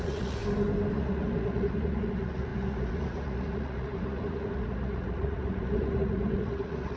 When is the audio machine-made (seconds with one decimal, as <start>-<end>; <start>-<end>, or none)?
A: 0.0-0.4; 0.9-7.0